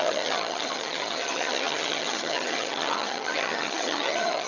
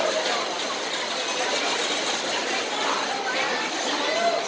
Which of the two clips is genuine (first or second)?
second